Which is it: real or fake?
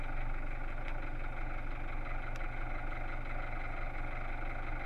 real